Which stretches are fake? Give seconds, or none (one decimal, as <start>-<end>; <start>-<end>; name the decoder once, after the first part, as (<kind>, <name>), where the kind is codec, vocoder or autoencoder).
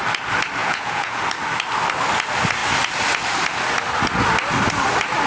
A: 0.6-1.2 (vocoder, Vocos)